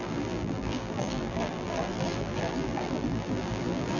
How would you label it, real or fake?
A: fake